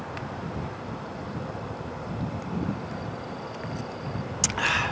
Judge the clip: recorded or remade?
recorded